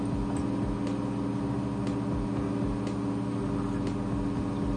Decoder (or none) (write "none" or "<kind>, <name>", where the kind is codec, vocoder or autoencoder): none